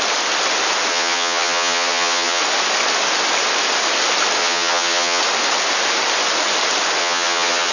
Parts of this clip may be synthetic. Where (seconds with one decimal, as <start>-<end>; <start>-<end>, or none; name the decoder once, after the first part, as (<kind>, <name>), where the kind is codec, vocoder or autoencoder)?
0.9-2.4 (vocoder, HiFi-GAN); 4.4-5.2; 7.0-7.7